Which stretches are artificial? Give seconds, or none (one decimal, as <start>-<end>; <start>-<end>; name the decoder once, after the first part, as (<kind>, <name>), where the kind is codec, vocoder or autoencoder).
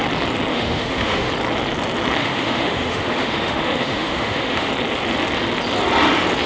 0.5-1.3 (autoencoder, DAC-VAE); 2.2-4.7